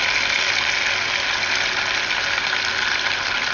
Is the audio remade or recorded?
recorded